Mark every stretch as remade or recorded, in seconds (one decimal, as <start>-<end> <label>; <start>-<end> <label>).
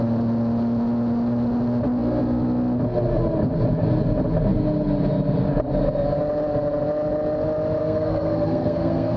0.0-7.8 recorded; 7.8-9.2 remade